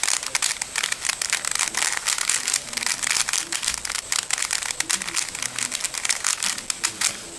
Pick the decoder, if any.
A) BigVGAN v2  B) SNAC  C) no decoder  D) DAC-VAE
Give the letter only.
C